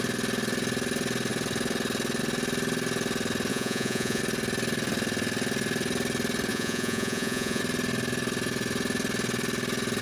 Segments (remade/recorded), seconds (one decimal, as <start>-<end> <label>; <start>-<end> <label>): 0.0-3.5 recorded; 3.5-4.2 remade; 4.2-6.5 recorded; 6.5-7.6 remade; 7.6-10.0 recorded